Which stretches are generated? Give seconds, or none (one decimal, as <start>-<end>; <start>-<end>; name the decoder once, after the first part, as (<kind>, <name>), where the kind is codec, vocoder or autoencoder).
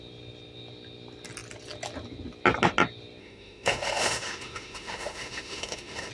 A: 3.2-6.1 (autoencoder, DAC-VAE)